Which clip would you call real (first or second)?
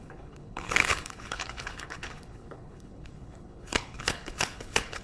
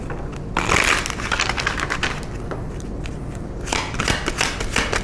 second